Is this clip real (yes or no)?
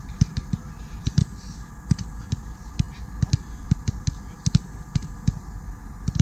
yes